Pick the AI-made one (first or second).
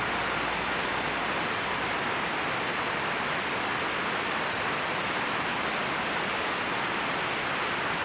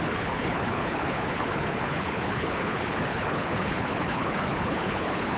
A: second